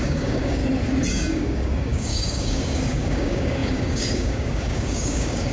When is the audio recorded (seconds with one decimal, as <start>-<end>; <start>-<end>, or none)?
0.6-1.1